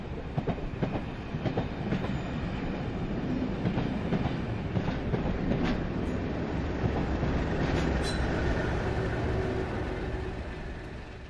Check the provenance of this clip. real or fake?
real